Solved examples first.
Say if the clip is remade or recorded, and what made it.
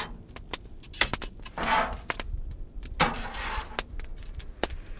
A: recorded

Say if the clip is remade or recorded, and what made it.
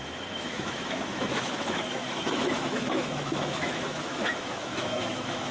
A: remade, autoencoder, DAC-VAE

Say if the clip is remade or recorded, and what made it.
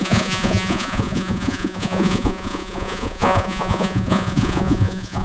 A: remade, vocoder, Vocos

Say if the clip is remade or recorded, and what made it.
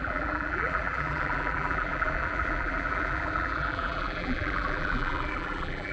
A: remade, vocoder, BigVGAN v2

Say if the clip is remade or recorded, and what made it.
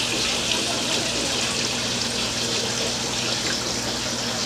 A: recorded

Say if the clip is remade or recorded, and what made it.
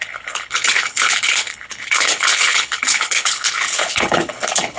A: remade, codec, HILCodec